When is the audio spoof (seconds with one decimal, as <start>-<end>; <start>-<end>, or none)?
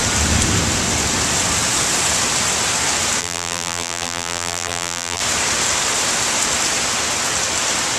3.2-5.2